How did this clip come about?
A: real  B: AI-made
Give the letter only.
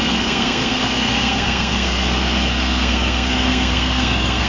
B